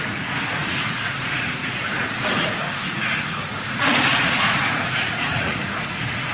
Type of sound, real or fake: fake